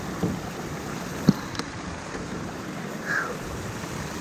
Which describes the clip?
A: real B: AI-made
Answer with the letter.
A